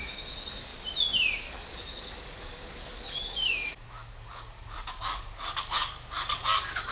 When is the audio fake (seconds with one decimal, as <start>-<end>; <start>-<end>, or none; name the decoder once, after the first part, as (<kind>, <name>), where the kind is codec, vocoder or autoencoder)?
0.0-0.7 (codec, DAC); 1.4-6.9